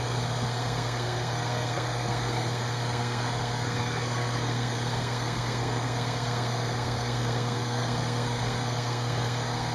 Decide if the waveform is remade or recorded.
remade